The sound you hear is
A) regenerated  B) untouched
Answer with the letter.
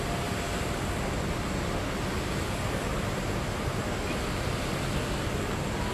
B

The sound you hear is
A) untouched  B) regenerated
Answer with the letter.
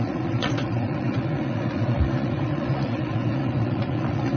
B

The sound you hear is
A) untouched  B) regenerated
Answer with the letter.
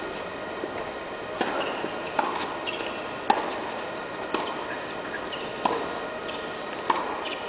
A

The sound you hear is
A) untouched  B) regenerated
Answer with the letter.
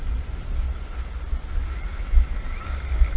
A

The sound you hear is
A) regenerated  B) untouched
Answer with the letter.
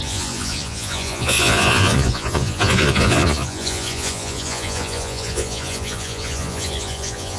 A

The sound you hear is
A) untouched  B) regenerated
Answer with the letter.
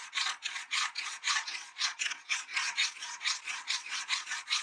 B